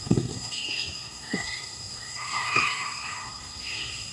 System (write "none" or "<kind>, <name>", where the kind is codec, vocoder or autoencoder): codec, SNAC